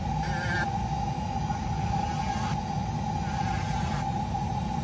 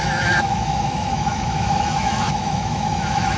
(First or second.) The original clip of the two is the first